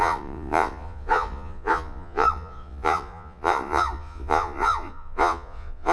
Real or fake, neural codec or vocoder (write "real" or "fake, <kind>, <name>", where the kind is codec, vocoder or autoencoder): fake, vocoder, Vocos